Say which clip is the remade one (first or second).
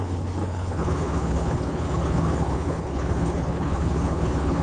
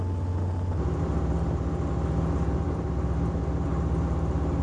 first